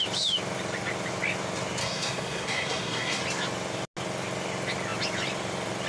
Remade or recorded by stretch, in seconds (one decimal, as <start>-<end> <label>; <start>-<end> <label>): 0.0-1.8 recorded; 1.8-3.2 remade; 3.2-5.9 recorded